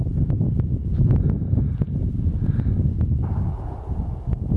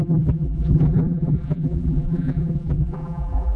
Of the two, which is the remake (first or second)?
second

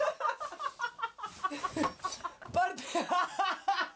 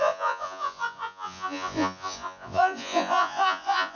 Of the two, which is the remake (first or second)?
second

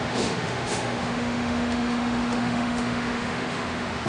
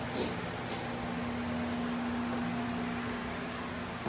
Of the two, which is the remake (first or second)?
first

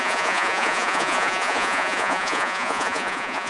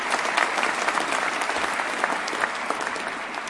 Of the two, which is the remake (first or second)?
first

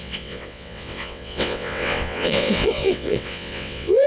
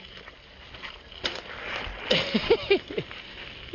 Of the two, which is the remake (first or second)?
first